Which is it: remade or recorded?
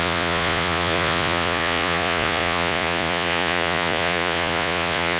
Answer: remade